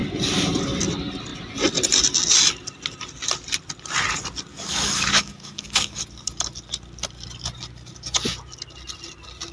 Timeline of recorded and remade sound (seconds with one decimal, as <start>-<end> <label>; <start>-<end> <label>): 0.0-4.5 recorded; 4.5-6.0 remade; 6.0-9.5 recorded